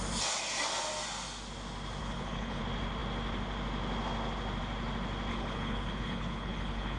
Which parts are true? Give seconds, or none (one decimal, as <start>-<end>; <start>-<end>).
0.0-2.0; 2.6-5.3